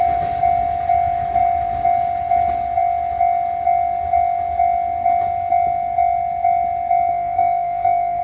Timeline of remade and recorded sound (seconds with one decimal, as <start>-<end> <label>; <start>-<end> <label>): 0.0-7.1 recorded; 7.1-8.2 remade